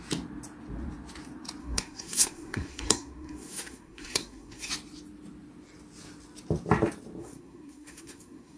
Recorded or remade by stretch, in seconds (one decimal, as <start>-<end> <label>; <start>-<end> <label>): 0.0-1.6 recorded; 1.6-4.7 remade; 4.7-7.2 recorded; 7.2-8.6 remade